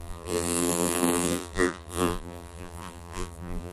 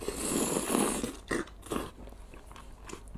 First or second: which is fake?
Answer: first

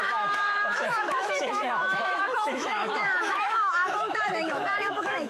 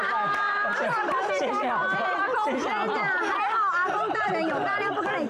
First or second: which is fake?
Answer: first